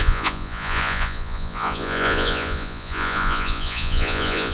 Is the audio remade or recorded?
remade